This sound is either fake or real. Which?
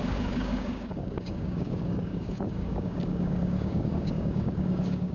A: fake